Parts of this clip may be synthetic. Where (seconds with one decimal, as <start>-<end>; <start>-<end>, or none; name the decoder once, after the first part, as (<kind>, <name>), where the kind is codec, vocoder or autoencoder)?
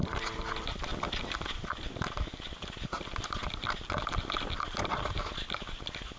none